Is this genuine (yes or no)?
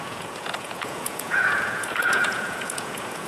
no